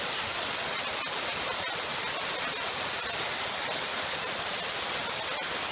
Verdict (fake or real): real